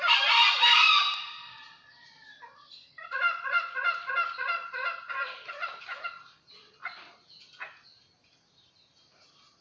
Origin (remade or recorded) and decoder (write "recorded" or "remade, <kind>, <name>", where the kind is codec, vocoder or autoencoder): recorded